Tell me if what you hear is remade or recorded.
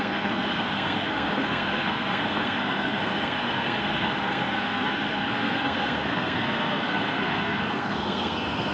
remade